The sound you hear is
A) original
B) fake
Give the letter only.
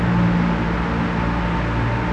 A